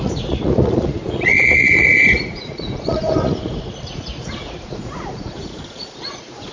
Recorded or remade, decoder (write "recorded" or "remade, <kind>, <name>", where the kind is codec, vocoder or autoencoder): remade, vocoder, Vocos